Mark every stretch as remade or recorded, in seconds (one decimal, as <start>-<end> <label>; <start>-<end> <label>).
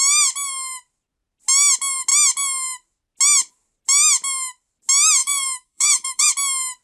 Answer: 0.0-5.2 recorded; 5.2-6.3 remade; 6.3-6.8 recorded